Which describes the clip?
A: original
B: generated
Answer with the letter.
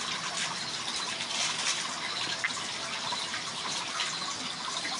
A